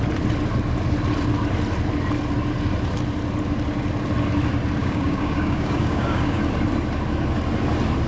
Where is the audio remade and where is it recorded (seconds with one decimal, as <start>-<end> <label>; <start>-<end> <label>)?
0.0-4.8 recorded; 4.8-6.4 remade; 6.4-8.1 recorded